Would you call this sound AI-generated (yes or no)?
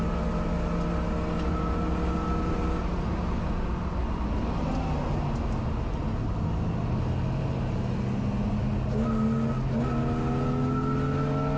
no